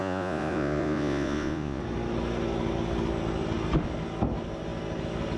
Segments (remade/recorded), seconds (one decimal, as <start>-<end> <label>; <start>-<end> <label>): 0.0-1.8 remade; 1.8-5.4 recorded